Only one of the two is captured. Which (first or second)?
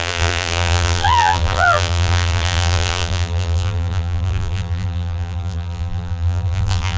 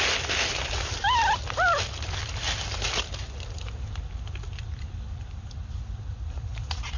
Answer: second